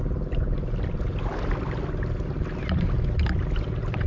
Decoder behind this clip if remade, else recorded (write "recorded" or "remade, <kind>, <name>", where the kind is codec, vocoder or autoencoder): recorded